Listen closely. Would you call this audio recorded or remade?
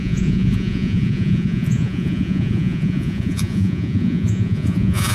remade